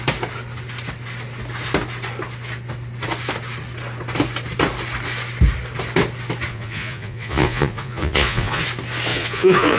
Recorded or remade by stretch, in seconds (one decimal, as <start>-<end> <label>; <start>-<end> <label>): 0.0-6.5 recorded; 6.5-8.6 remade; 8.6-9.1 recorded; 9.1-9.8 remade